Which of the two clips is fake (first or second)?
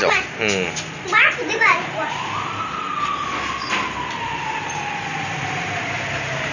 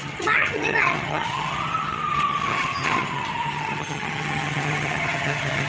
second